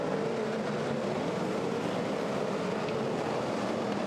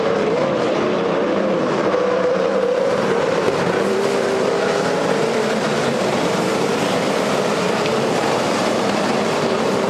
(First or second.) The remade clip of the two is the second